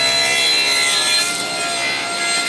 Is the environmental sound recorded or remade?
recorded